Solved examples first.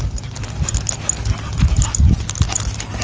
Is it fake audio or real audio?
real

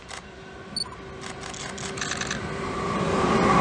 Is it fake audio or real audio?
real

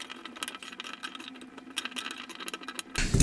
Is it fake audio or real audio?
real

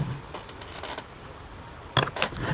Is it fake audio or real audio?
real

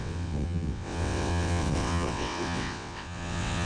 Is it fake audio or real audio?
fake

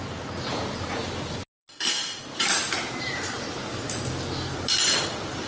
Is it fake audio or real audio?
real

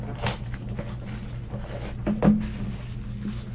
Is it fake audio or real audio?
real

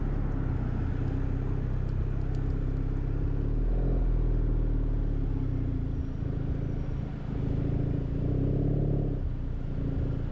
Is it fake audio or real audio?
real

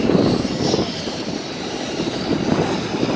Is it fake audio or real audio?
real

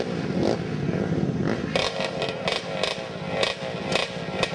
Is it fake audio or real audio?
real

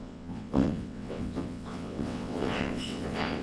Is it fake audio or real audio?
fake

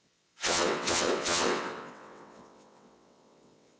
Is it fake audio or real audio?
fake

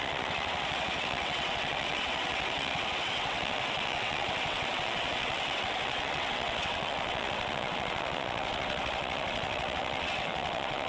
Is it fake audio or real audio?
fake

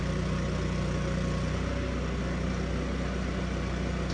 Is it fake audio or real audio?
real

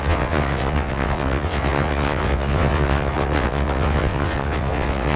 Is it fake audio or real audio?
fake